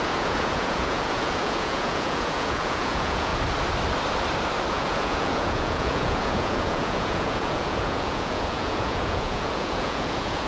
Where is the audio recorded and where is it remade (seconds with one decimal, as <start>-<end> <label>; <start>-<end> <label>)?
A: 0.0-3.3 remade; 3.3-4.7 recorded; 4.7-10.5 remade